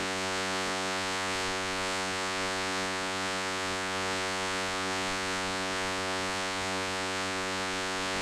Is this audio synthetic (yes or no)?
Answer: yes